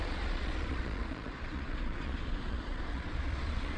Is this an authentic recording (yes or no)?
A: no